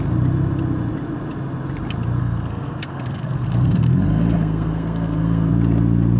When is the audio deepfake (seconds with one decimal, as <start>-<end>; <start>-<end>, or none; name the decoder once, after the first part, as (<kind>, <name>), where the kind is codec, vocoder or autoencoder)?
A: 2.2-5.5 (codec, SNAC)